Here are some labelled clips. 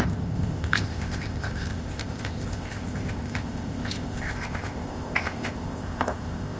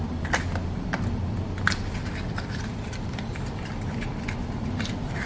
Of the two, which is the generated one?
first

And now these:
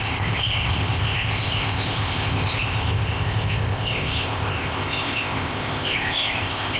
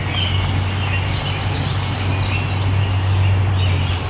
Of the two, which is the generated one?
first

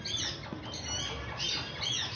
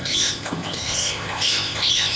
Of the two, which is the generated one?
second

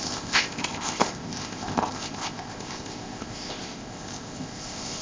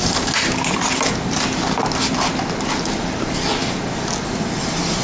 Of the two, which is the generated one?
first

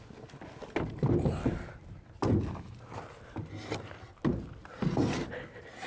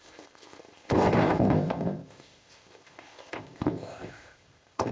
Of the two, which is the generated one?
second